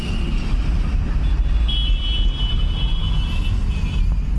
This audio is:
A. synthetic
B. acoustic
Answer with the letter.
B